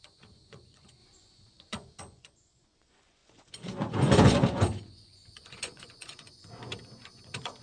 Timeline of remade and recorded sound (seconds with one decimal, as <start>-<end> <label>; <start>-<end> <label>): 0.0-7.6 remade